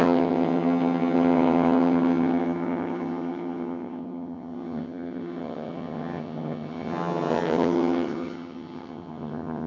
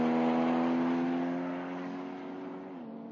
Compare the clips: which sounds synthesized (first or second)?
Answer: first